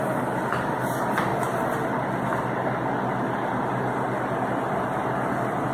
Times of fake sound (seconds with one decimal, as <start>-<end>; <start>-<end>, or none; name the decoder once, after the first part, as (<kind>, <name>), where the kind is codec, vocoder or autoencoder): none